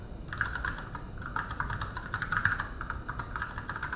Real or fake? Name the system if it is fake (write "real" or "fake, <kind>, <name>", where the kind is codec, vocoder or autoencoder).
real